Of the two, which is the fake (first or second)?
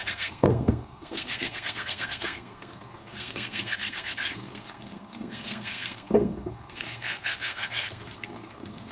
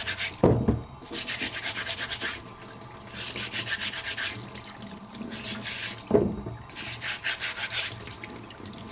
first